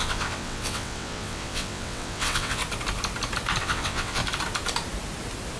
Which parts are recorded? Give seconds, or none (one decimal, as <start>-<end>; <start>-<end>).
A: 2.6-3.6; 4.2-5.6